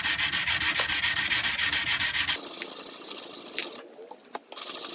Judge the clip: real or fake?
real